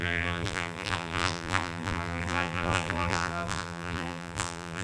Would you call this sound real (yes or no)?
no